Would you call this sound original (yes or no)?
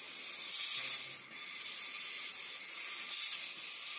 yes